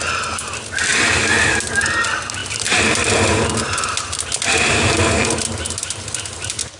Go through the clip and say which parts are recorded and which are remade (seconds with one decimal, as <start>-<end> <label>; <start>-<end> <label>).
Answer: 0.0-2.4 recorded; 2.4-3.1 remade; 3.1-6.8 recorded